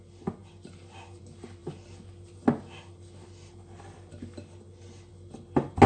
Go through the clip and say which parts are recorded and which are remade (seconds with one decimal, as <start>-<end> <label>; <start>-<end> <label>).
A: 0.0-5.9 recorded